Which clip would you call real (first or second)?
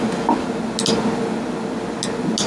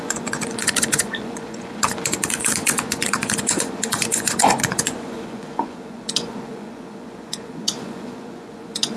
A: first